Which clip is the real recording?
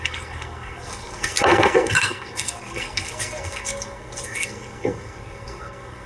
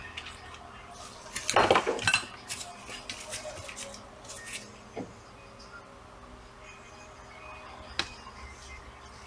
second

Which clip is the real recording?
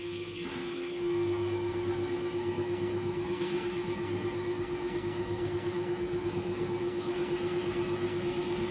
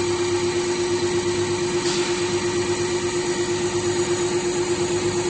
second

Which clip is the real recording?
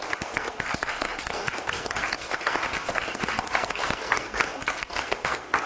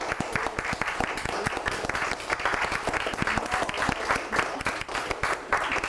second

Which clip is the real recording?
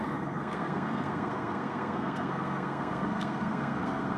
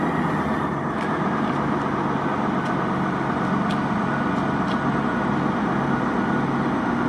second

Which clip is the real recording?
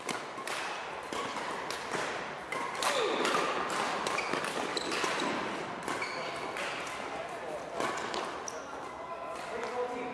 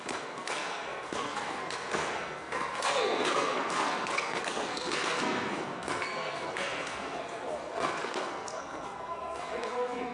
first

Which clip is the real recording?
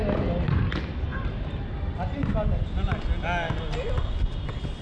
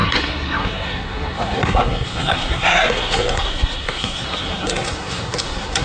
first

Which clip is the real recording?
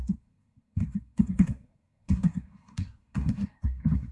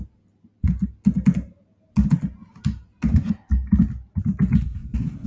second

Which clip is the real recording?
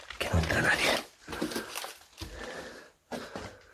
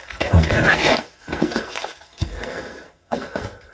first